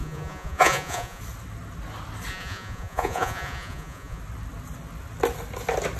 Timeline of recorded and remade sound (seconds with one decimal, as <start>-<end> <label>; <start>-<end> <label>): 0.0-1.2 remade; 1.2-2.3 recorded; 2.3-4.2 remade; 4.2-6.0 recorded